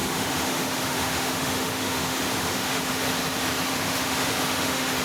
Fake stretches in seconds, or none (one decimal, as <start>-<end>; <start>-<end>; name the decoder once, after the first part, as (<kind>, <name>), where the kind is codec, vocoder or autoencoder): 0.0-3.0 (autoencoder, DAC-VAE); 3.7-5.0